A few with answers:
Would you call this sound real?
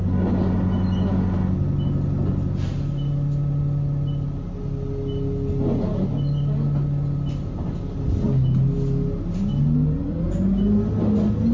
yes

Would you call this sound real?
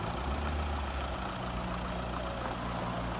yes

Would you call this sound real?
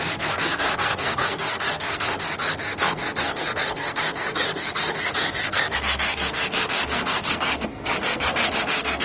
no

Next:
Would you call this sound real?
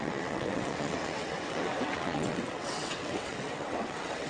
no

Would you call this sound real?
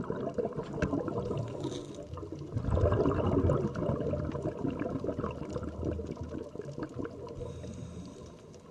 yes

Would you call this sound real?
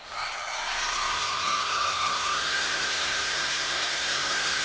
no